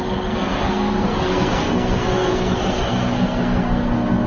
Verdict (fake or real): fake